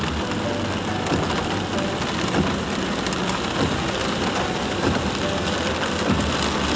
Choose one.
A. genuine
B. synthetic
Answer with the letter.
A